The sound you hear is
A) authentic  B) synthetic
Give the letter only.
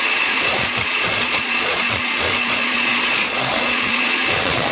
B